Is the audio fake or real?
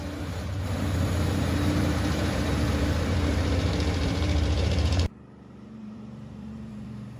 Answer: fake